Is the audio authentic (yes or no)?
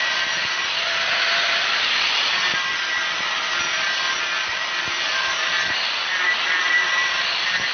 yes